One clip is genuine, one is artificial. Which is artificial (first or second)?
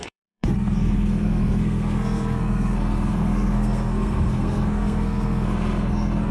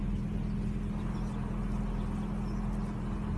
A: first